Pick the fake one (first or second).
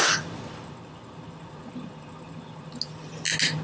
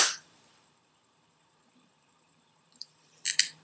second